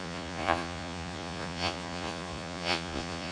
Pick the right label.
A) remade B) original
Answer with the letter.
A